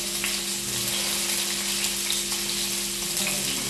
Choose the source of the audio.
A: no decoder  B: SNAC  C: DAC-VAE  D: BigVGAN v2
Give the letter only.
A